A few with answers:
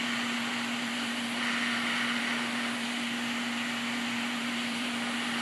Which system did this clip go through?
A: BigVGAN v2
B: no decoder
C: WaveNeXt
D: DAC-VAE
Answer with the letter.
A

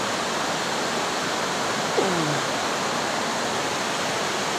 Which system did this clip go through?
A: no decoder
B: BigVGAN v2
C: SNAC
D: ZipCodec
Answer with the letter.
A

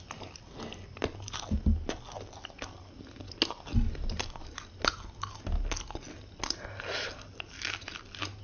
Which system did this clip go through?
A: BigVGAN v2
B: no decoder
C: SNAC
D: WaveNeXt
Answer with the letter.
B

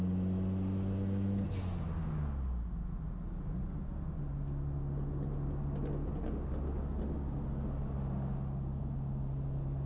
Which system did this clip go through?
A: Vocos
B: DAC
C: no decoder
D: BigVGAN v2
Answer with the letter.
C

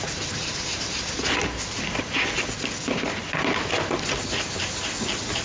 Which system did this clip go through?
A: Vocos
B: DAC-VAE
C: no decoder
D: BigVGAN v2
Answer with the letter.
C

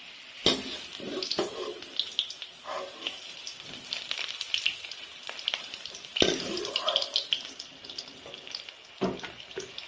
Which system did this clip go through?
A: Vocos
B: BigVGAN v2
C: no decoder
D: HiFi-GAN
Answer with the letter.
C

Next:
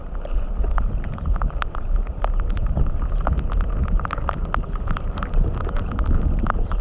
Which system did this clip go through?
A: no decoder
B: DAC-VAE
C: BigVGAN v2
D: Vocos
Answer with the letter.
A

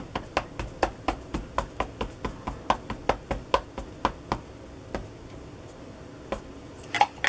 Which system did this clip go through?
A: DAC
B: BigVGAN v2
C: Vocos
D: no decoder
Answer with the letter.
D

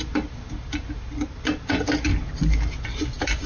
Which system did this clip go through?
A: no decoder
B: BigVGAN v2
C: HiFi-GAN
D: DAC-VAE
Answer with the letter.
A